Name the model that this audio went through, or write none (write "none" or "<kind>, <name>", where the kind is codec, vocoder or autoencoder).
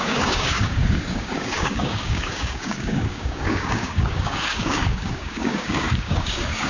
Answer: codec, DAC